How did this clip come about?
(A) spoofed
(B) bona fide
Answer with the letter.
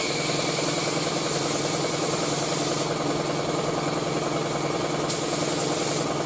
B